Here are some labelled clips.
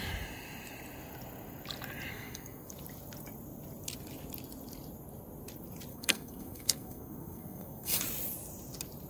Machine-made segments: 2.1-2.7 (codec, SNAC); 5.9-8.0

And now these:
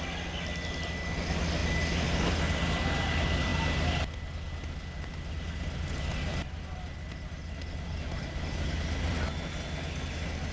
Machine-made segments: none

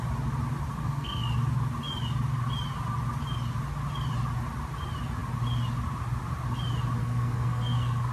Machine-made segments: 0.7-1.2 (codec, SNAC); 7.0-8.1

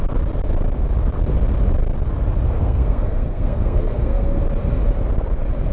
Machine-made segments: 2.6-4.4 (codec, SNAC)